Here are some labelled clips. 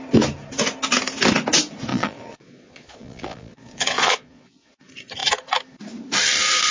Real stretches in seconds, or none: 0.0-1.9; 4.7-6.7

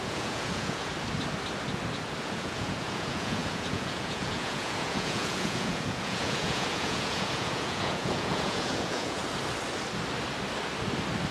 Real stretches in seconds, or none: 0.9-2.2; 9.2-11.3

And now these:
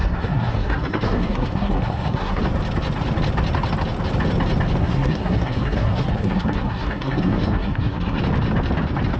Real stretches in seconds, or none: 2.4-4.8; 8.2-9.2